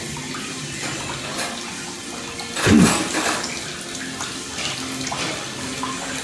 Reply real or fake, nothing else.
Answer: real